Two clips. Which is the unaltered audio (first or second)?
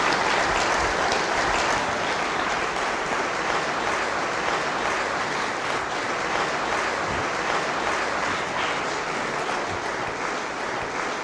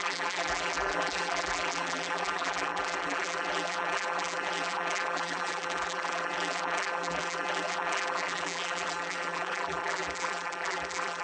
first